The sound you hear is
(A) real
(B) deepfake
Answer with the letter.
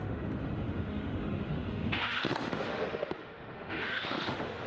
B